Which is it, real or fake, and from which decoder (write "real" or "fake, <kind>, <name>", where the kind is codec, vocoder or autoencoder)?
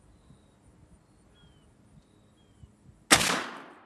real